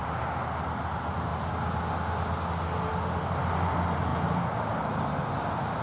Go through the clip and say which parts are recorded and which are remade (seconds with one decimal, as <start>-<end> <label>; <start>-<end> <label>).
0.0-5.8 recorded